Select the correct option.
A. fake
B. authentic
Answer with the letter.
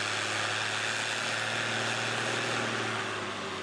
B